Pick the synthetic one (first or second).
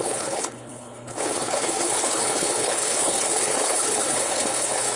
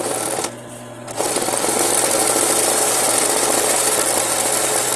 first